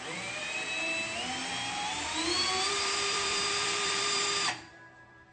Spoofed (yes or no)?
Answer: yes